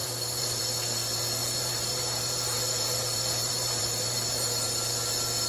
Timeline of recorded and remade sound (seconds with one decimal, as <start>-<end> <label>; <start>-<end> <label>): 0.0-0.6 remade; 0.6-1.4 recorded; 1.4-4.7 remade; 4.7-5.5 recorded

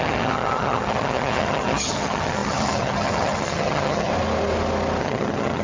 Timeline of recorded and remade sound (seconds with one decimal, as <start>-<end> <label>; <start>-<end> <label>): 0.0-4.1 remade; 4.1-5.0 recorded; 5.0-5.6 remade

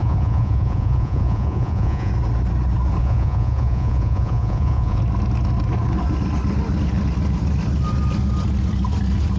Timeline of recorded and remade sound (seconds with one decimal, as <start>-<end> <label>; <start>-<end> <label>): 0.0-2.1 remade; 2.1-3.0 recorded; 3.0-5.0 remade; 5.0-9.4 recorded

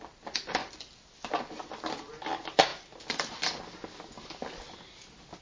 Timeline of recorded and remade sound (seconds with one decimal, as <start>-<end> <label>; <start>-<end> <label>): 0.0-5.4 recorded

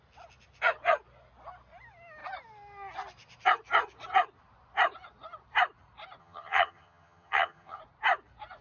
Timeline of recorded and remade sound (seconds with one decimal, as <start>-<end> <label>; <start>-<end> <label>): 0.0-6.2 recorded; 6.2-7.8 remade; 7.8-8.6 recorded

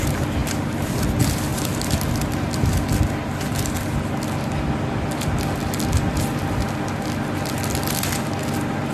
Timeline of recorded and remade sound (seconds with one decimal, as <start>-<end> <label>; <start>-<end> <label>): 0.0-8.9 recorded

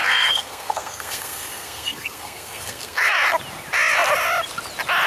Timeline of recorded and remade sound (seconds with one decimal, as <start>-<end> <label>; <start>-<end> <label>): 0.0-3.1 remade; 3.1-5.1 recorded

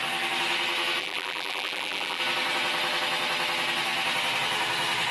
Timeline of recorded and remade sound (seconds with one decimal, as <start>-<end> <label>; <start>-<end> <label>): 0.0-1.0 recorded; 1.0-2.2 remade; 2.2-5.1 recorded